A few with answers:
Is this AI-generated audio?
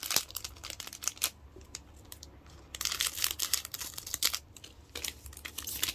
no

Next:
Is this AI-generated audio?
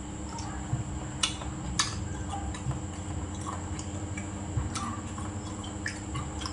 no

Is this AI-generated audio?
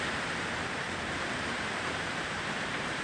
yes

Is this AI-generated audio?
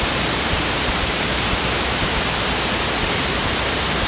yes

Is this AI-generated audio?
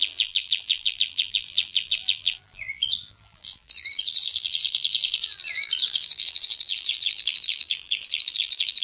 yes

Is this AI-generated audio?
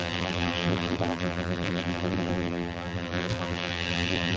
yes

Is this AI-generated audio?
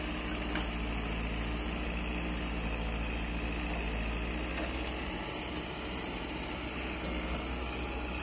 no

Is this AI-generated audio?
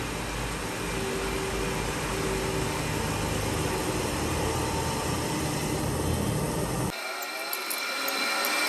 no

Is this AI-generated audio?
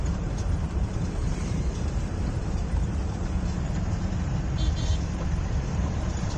yes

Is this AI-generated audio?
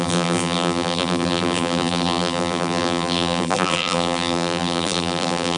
yes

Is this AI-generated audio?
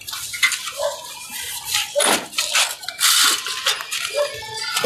no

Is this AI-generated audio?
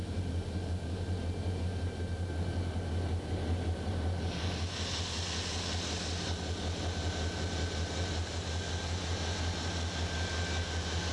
no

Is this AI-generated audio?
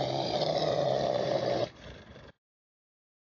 yes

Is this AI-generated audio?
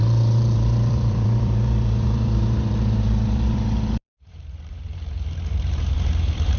yes